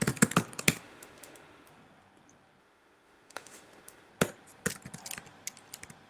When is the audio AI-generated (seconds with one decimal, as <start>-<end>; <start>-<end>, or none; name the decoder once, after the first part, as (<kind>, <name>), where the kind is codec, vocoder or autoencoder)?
0.8-1.7 (autoencoder, DAC-VAE); 2.6-4.1